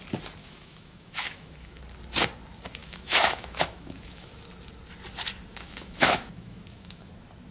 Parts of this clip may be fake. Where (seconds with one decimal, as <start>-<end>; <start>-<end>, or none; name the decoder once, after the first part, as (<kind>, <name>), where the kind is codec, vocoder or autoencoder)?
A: 0.4-1.8 (autoencoder, DAC-VAE); 2.8-4.4; 5.5-7.1